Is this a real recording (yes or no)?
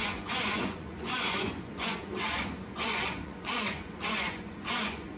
no